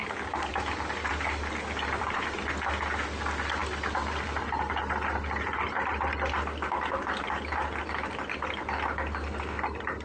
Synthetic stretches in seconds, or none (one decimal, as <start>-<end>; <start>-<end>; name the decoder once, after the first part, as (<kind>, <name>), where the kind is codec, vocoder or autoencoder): 0.0-0.5 (codec, DAC)